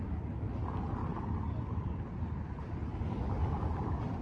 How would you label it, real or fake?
real